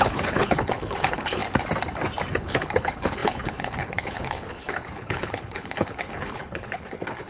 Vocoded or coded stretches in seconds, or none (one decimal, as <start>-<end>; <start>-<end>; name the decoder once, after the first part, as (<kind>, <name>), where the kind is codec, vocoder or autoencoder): 0.0-1.4 (codec, HILCodec); 2.3-7.3